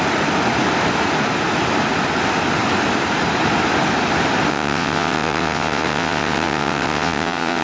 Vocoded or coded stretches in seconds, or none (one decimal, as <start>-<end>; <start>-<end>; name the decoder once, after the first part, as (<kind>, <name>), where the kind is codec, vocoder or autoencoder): 4.5-7.6 (vocoder, WaveNeXt)